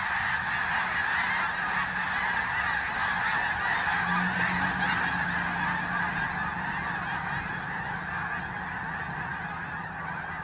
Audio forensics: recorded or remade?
recorded